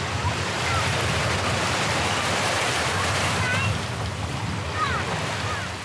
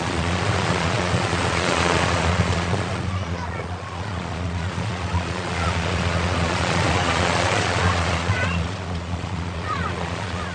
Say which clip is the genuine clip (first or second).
first